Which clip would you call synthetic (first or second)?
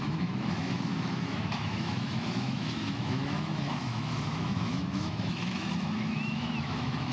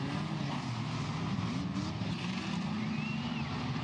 first